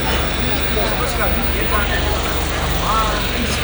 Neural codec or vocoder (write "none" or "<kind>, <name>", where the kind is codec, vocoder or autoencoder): none